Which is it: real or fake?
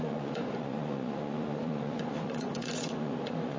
fake